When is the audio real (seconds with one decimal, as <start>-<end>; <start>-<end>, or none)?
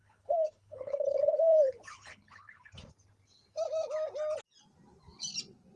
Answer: 2.9-5.8